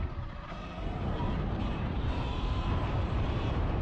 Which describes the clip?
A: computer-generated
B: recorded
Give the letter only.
A